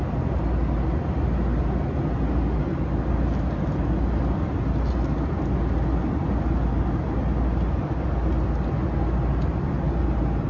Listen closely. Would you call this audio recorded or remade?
recorded